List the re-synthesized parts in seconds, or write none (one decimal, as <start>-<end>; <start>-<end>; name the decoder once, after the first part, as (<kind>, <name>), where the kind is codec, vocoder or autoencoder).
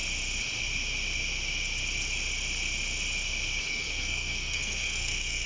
3.7-5.5 (codec, SNAC)